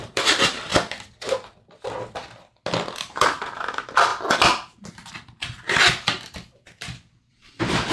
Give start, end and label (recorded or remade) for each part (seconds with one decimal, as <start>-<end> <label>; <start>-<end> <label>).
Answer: 0.0-0.7 remade; 0.7-3.0 recorded; 3.0-4.1 remade; 4.1-7.3 recorded; 7.3-7.9 remade

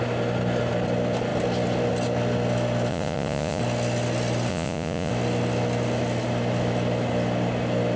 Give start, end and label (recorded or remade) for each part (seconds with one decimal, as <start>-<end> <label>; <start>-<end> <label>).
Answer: 0.0-2.9 recorded; 2.9-3.6 remade; 3.6-4.5 recorded; 4.5-5.1 remade; 5.1-8.0 recorded

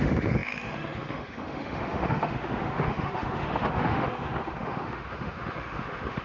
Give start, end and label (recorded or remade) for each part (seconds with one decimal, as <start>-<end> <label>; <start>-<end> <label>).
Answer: 0.0-6.2 remade

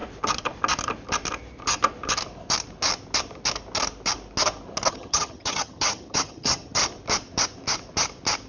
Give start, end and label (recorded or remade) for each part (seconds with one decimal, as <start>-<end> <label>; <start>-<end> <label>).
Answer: 0.0-4.9 recorded; 4.9-6.8 remade; 6.8-8.5 recorded

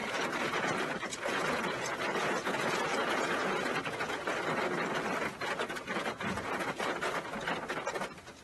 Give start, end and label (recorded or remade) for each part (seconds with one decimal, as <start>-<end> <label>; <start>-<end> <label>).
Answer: 0.0-4.2 remade; 4.2-5.3 recorded; 5.3-7.5 remade; 7.5-8.4 recorded

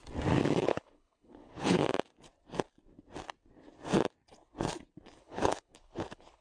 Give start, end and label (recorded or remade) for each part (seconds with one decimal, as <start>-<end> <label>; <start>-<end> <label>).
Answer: 0.0-0.6 recorded; 0.6-1.8 remade; 1.8-5.2 recorded; 5.2-6.4 remade

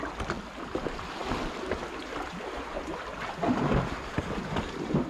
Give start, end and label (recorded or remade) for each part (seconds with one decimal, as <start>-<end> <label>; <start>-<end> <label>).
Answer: 0.0-5.1 recorded

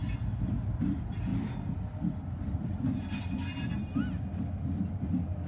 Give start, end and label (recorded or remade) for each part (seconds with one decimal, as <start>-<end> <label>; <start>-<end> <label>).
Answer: 0.0-5.5 recorded